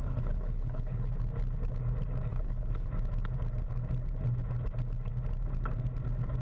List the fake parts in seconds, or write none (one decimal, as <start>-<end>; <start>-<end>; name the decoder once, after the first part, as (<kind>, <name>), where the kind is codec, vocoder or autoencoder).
0.0-1.1 (codec, HILCodec); 2.3-2.9